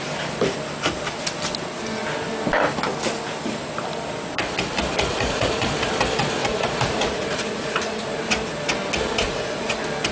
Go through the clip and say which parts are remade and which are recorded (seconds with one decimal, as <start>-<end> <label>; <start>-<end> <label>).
0.0-5.1 recorded; 5.1-5.7 remade; 5.7-6.4 recorded; 6.4-8.2 remade; 8.2-9.2 recorded; 9.2-9.7 remade; 9.7-10.1 recorded